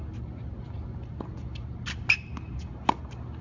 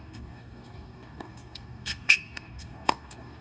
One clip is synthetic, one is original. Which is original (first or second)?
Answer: first